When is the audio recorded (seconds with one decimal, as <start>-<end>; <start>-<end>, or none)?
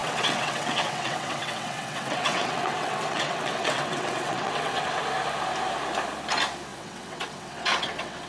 5.0-6.7